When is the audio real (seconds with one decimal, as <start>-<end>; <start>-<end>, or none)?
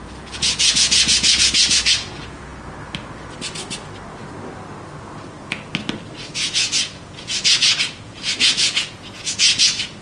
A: 2.5-6.3